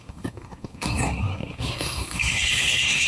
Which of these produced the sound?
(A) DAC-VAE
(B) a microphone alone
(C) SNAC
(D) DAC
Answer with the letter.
C